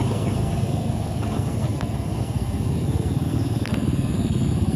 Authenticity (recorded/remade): remade